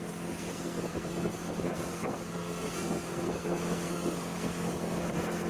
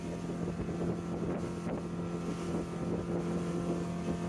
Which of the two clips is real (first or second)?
second